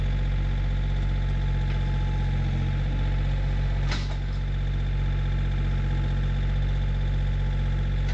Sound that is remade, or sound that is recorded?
recorded